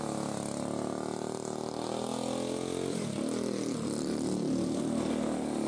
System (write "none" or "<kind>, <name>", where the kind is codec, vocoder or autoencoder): none